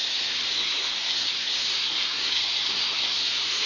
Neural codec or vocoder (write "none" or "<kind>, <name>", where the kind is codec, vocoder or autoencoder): codec, SNAC